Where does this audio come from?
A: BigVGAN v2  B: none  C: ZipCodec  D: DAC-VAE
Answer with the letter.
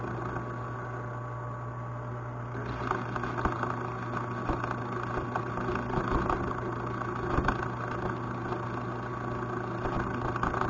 B